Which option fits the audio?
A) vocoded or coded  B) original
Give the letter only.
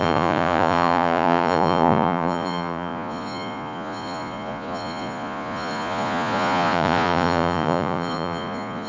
A